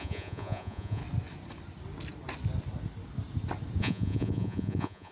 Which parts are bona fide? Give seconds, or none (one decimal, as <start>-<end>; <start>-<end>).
1.0-3.8